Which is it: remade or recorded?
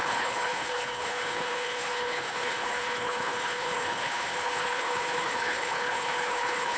remade